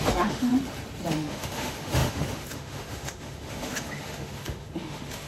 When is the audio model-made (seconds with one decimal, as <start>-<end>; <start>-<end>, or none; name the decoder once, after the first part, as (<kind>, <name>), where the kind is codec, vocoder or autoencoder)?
0.0-0.5 (autoencoder, DAC-VAE); 1.1-5.3